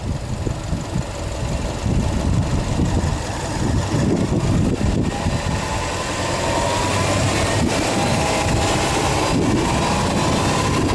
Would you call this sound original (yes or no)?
yes